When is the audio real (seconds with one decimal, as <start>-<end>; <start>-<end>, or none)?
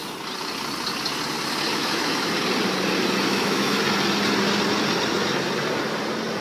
0.0-1.7; 2.3-3.3; 3.8-6.4